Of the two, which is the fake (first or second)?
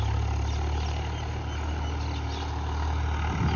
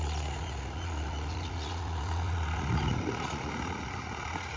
second